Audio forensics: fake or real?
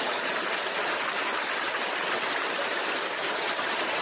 real